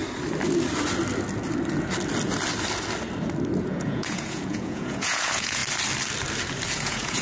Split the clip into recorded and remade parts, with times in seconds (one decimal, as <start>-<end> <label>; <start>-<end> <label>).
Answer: 0.0-3.6 recorded; 3.6-5.6 remade; 5.6-6.7 recorded; 6.7-7.2 remade